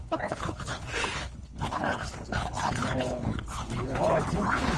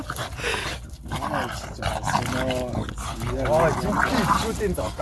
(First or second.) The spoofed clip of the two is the first